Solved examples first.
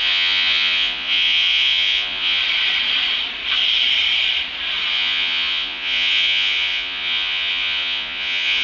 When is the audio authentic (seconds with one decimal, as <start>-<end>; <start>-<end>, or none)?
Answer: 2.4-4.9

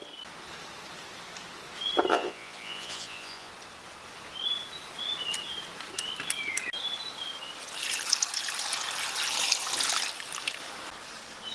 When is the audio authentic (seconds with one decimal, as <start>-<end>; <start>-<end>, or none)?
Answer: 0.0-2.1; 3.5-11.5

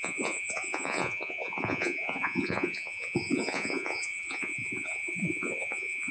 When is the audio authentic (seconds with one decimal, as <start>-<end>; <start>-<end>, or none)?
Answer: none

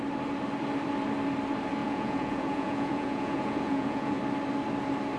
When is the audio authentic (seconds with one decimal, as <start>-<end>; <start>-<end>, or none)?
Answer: 0.0-1.8; 4.2-5.2

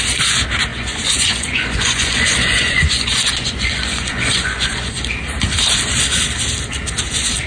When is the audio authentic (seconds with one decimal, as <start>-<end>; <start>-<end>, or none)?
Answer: 0.0-0.7; 4.9-7.5

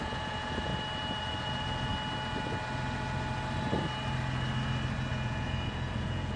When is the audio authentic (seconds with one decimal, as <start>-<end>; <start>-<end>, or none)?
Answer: 0.7-1.2; 1.9-5.1